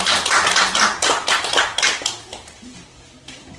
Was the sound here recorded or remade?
recorded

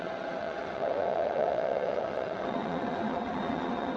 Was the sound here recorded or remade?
remade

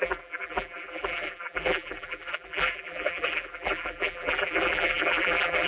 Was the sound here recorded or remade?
remade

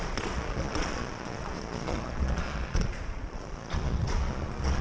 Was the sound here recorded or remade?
remade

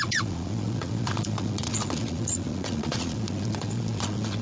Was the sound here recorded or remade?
remade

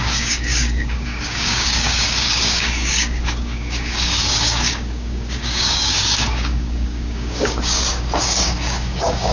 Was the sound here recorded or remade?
remade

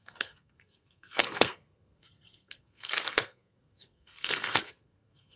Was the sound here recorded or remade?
remade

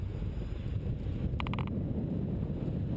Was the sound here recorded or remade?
recorded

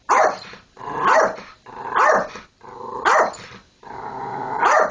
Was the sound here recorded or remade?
recorded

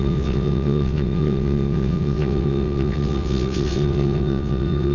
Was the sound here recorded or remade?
remade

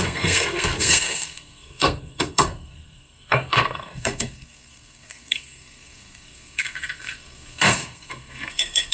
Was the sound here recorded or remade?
remade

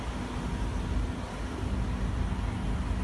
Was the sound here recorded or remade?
recorded